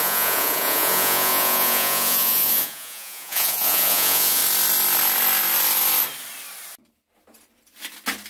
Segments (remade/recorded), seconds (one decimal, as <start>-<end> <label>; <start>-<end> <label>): 0.0-4.4 remade; 4.4-8.3 recorded